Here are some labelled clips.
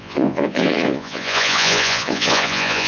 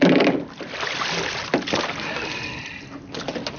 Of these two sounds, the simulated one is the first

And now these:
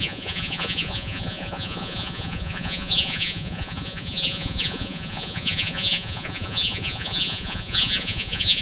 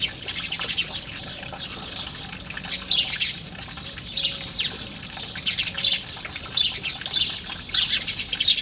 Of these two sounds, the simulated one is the first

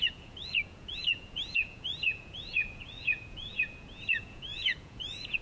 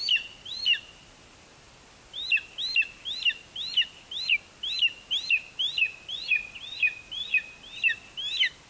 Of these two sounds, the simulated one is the first